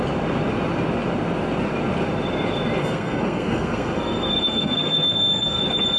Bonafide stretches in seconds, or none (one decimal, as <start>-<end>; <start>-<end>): 0.0-2.8; 5.6-6.0